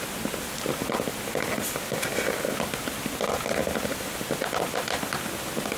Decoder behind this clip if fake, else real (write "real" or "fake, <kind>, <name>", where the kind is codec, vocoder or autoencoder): real